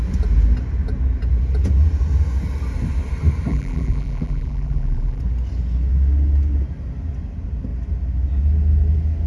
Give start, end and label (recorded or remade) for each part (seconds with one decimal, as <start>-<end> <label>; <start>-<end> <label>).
0.0-3.5 recorded; 3.5-5.2 remade; 5.2-9.3 recorded